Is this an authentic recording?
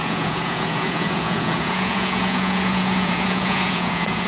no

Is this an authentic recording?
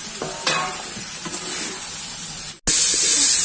yes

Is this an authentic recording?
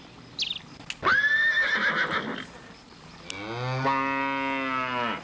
yes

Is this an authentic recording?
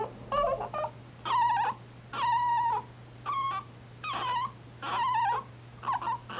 yes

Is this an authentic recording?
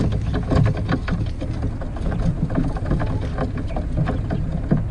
yes